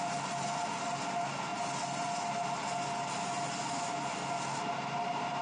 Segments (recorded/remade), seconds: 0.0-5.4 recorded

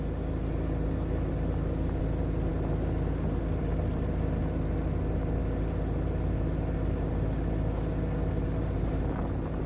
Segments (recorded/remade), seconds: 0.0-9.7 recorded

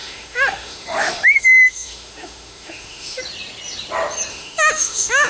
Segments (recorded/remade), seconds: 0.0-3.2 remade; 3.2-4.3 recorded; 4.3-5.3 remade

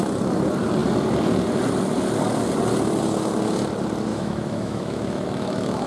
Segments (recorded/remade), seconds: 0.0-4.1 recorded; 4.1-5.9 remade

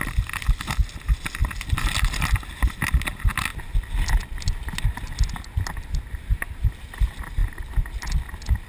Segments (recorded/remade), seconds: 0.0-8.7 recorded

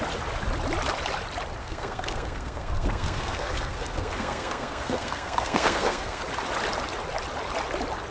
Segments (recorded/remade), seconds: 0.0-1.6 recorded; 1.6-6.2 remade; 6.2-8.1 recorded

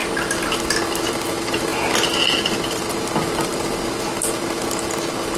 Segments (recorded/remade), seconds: 0.0-5.4 recorded

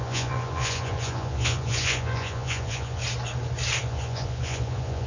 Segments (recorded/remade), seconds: 0.0-3.0 remade; 3.0-3.8 recorded; 3.8-5.1 remade